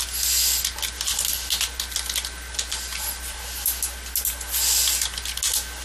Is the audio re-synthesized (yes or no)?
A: no